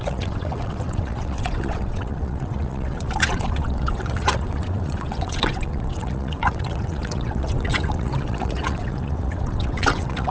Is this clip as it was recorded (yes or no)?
no